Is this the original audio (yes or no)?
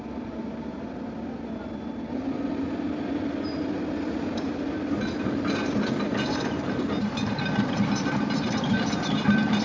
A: yes